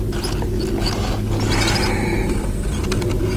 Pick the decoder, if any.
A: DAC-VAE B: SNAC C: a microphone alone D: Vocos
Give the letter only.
C